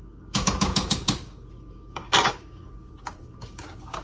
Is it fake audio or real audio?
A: fake